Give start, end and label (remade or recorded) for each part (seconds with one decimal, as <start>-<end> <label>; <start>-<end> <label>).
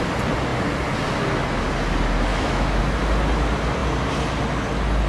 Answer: 0.0-2.3 recorded; 2.3-2.8 remade; 2.8-5.1 recorded